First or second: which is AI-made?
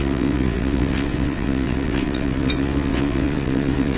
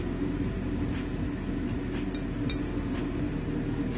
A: first